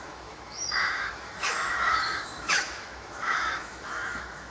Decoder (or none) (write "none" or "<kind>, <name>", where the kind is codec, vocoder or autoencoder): autoencoder, DAC-VAE